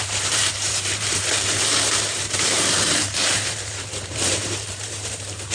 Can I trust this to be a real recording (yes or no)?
no